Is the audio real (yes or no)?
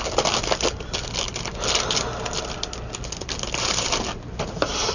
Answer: yes